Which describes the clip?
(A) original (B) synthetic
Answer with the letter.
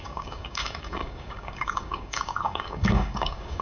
B